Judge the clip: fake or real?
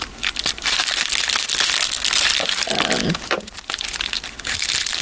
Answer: real